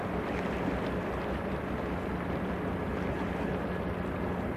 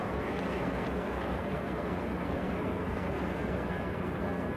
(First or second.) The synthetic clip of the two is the second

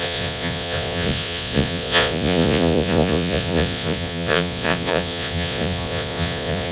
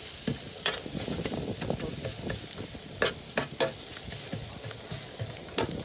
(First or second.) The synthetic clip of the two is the first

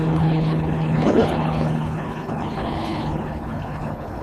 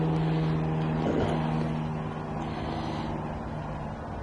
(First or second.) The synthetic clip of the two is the first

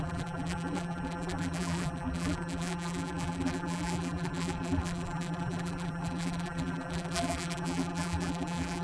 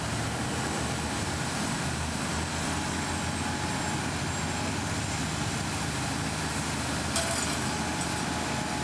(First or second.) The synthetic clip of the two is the first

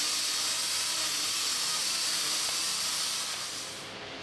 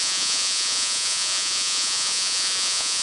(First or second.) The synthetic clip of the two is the second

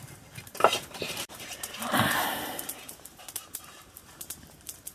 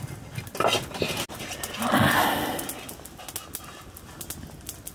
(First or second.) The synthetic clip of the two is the first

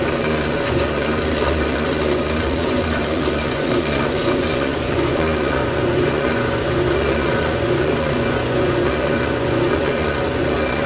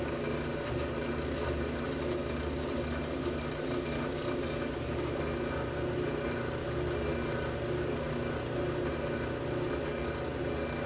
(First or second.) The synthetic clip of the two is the first